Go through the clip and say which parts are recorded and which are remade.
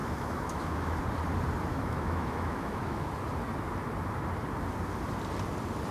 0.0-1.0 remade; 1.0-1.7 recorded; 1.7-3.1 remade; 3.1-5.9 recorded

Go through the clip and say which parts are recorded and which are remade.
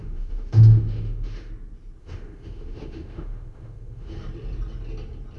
0.0-1.5 remade; 1.5-2.0 recorded; 2.0-4.1 remade; 4.1-5.4 recorded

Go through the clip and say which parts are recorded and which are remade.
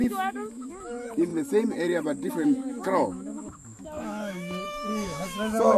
0.0-1.3 remade; 1.3-2.3 recorded; 2.3-5.8 remade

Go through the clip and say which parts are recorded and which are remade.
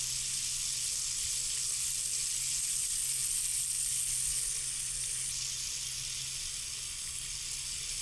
0.0-8.0 recorded